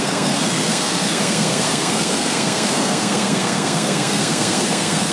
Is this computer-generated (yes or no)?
yes